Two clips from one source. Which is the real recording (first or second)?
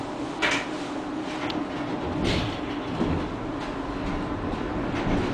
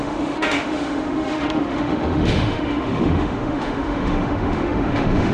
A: first